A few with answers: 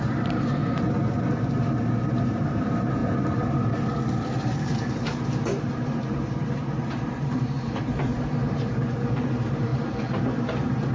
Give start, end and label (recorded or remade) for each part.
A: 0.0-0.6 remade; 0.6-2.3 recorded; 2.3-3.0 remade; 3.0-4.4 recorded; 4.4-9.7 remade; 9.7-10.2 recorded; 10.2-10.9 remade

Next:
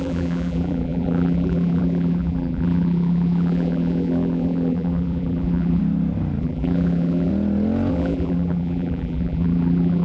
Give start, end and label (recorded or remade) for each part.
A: 0.0-5.8 remade; 5.8-6.4 recorded; 6.4-7.3 remade; 7.3-7.9 recorded; 7.9-10.0 remade

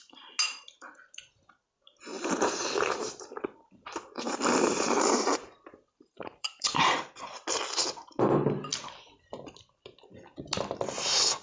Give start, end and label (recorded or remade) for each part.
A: 0.0-2.1 recorded; 2.1-7.0 remade; 7.0-11.4 recorded

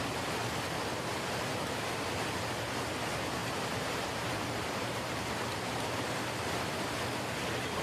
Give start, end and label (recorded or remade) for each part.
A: 0.0-3.4 recorded; 3.4-5.3 remade; 5.3-7.8 recorded

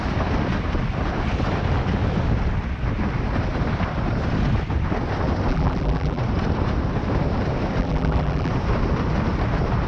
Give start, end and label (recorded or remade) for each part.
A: 0.0-5.5 recorded; 5.5-6.2 remade; 6.2-7.8 recorded; 7.8-8.5 remade; 8.5-9.9 recorded